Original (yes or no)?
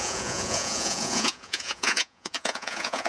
no